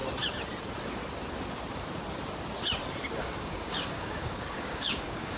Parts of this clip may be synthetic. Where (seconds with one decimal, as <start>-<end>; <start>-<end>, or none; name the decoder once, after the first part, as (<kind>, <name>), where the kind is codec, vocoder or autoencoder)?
3.2-5.4 (codec, DAC)